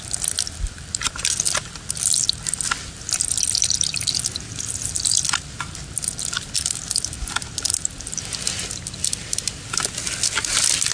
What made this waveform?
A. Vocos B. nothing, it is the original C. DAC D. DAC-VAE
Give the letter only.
B